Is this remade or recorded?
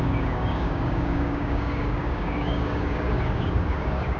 remade